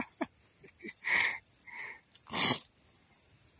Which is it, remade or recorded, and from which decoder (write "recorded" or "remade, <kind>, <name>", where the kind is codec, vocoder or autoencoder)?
recorded